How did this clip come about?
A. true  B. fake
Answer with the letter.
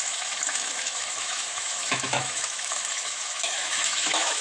B